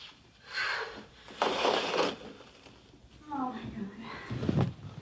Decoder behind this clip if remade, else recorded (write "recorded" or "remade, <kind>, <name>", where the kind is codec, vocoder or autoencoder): recorded